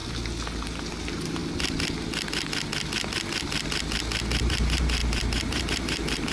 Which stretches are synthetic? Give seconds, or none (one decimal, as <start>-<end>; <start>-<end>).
1.0-1.4; 4.4-6.3